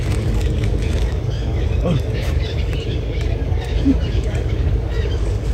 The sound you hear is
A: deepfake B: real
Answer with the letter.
A